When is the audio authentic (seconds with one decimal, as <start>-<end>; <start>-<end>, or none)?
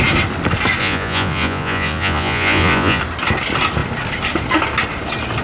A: 0.0-0.8; 3.0-5.4